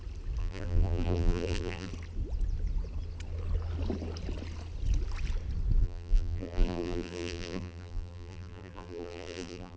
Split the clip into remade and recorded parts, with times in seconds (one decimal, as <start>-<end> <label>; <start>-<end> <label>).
0.0-0.4 recorded; 0.4-1.9 remade; 1.9-5.8 recorded; 5.8-9.8 remade